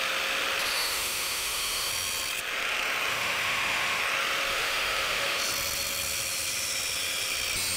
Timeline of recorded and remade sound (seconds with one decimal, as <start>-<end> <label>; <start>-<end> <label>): 0.0-0.7 recorded; 0.7-1.9 remade; 1.9-3.1 recorded; 3.1-4.0 remade; 4.0-4.5 recorded; 4.5-5.4 remade; 5.4-7.8 recorded